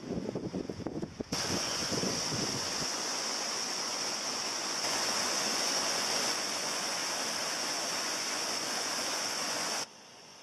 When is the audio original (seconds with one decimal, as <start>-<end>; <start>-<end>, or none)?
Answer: 7.0-7.5